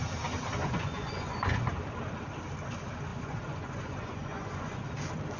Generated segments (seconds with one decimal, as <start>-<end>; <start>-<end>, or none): 0.6-1.7; 3.1-4.8